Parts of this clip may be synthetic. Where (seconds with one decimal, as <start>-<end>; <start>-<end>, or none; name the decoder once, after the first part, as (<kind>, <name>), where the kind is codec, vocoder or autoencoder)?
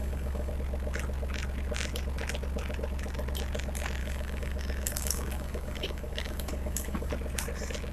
0.0-0.5 (codec, DAC); 4.0-7.1